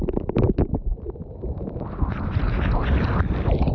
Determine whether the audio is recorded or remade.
recorded